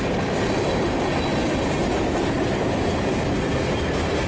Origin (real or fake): real